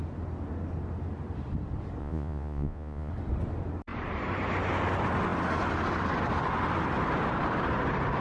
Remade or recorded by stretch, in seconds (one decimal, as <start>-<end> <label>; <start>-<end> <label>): 0.0-2.0 recorded; 2.0-3.1 remade; 3.1-8.2 recorded